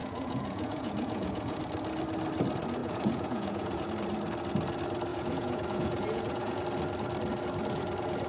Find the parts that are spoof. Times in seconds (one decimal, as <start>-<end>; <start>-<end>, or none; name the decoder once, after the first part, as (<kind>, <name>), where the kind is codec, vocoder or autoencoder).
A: 0.0-1.6 (vocoder, Vocos); 2.8-3.9; 5.1-6.6